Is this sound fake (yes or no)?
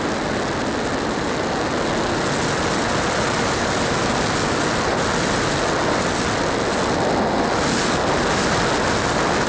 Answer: no